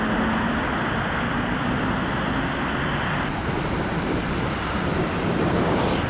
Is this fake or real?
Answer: real